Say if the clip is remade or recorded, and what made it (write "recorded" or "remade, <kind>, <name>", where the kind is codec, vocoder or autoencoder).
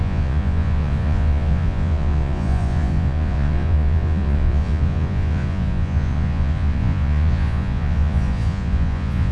remade, vocoder, Vocos